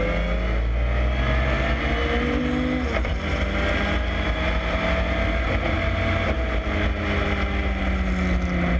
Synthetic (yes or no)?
no